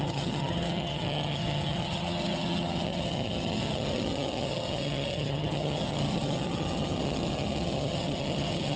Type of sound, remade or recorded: remade